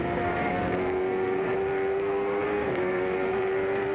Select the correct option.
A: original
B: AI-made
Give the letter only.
B